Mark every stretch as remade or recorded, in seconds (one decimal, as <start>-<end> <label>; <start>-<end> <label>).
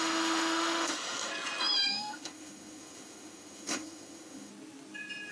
0.0-1.3 remade; 1.3-1.9 recorded; 1.9-4.5 remade; 4.5-5.3 recorded